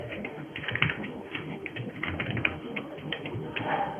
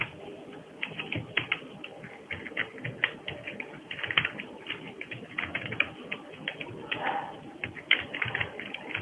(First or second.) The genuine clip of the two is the second